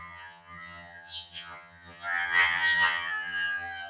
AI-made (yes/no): yes